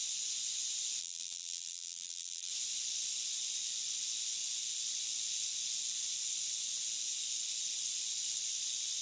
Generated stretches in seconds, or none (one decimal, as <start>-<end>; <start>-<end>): 1.0-2.5